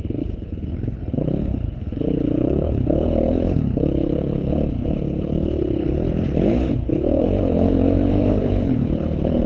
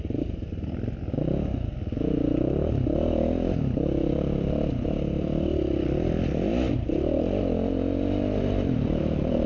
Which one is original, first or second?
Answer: second